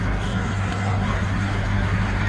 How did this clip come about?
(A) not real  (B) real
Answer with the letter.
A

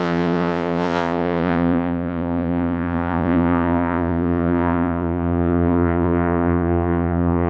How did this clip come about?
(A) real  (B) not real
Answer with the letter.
B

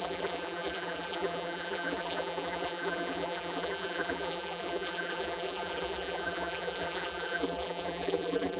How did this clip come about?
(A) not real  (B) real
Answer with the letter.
A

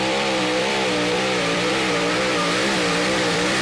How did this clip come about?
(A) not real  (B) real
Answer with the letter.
A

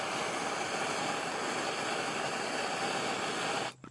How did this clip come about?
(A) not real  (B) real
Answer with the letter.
B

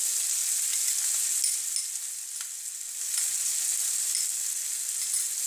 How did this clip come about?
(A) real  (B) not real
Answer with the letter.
A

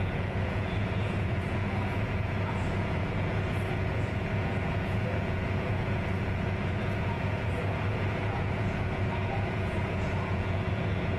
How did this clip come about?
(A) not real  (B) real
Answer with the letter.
A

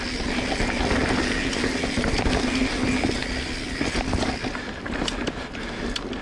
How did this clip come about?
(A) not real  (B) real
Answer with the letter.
B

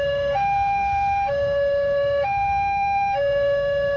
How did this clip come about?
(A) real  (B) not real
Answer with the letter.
B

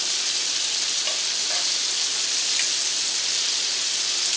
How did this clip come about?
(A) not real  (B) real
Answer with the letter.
B